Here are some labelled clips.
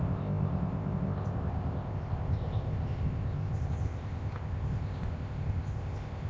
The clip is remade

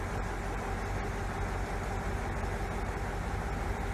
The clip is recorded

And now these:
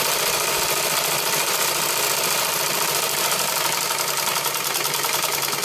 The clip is recorded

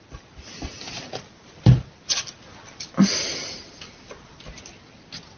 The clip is recorded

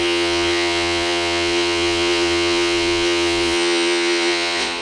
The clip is remade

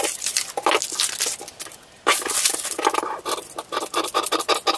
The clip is recorded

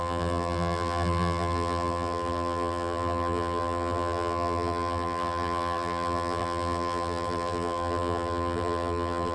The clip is remade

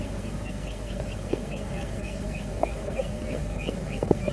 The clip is remade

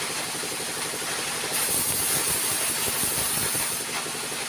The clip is recorded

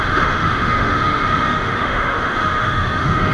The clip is remade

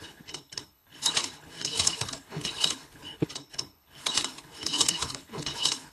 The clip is remade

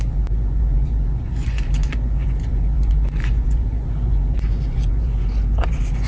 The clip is remade